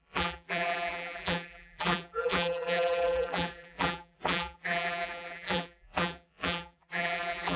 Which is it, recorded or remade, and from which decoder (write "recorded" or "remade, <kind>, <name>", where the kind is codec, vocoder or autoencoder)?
remade, vocoder, BigVGAN v2